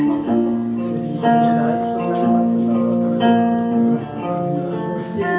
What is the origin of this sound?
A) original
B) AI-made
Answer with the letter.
A